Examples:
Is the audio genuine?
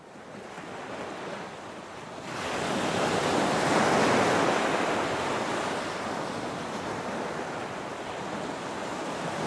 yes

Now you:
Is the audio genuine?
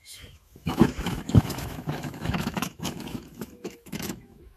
no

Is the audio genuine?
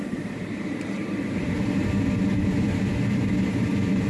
no